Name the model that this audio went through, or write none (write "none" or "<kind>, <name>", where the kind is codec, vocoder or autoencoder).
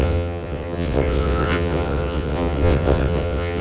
vocoder, WaveNeXt